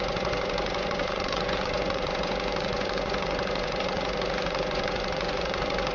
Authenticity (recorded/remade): remade